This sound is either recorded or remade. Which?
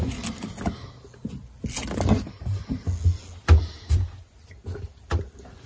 recorded